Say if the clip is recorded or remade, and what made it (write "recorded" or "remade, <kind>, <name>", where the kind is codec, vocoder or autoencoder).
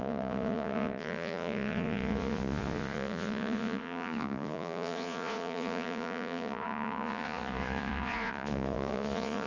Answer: remade, vocoder, Vocos